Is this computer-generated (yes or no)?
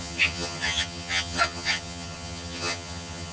yes